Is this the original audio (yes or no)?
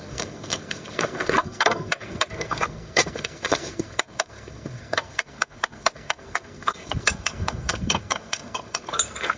no